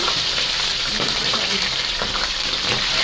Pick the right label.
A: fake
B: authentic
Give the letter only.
A